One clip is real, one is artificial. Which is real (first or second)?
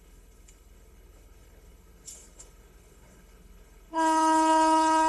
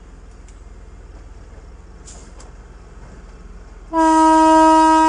second